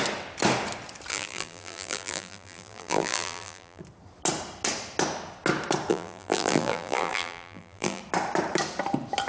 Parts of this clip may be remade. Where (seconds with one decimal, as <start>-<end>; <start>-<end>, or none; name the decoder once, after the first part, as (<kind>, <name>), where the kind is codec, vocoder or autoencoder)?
1.1-3.8 (vocoder, BigVGAN v2); 5.9-8.0